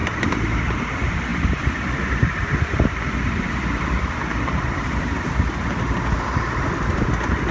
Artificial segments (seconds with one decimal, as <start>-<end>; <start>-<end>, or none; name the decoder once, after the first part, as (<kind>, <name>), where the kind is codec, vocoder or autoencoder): 0.0-0.6 (vocoder, BigVGAN v2); 1.3-5.8